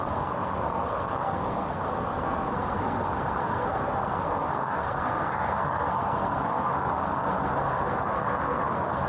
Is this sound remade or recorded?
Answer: remade